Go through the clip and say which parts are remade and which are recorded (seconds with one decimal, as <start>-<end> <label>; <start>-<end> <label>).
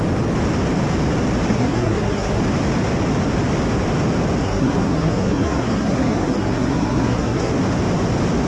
0.0-1.5 recorded; 1.5-2.4 remade; 2.4-4.4 recorded; 4.4-7.5 remade; 7.5-8.5 recorded